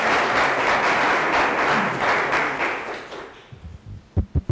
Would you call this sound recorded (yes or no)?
yes